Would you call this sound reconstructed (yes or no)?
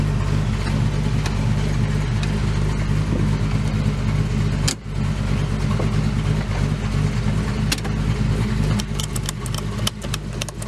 no